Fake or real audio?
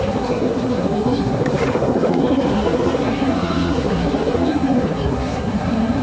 fake